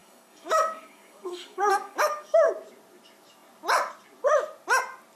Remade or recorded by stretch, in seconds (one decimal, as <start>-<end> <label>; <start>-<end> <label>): 0.0-2.5 remade; 2.5-5.2 recorded